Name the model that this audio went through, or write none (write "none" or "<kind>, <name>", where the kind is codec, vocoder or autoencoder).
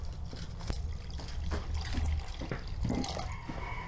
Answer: none